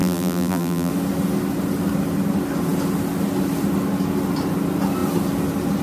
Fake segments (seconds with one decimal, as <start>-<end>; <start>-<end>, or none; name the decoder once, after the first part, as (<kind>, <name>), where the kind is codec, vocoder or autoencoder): 0.0-0.9 (vocoder, BigVGAN v2)